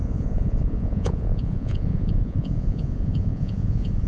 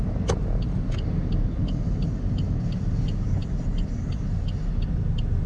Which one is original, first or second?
second